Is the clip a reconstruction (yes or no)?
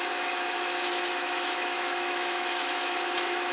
yes